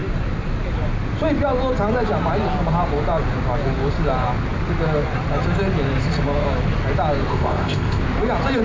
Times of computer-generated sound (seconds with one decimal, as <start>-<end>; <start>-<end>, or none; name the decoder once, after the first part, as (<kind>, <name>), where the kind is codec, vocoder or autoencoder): 7.3-8.0 (codec, ZipCodec)